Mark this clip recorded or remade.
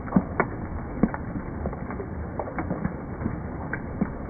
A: recorded